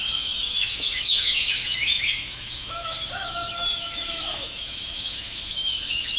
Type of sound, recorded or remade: remade